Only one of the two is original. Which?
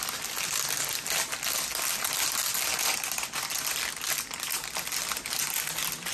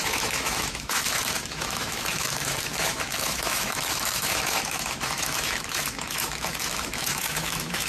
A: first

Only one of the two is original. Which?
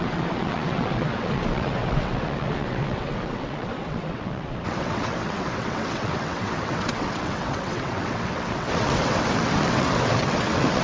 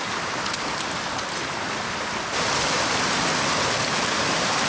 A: second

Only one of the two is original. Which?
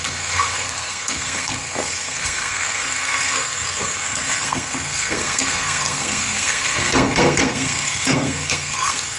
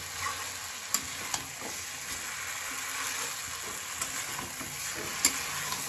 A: second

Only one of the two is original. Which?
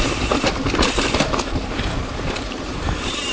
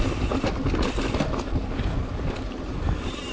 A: second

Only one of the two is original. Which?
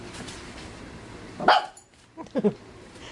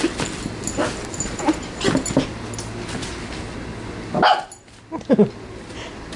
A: second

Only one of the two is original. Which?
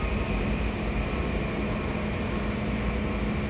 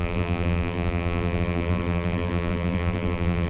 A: first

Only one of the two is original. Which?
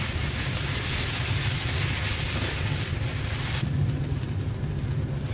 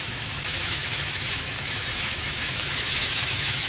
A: first